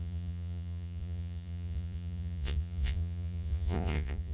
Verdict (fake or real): fake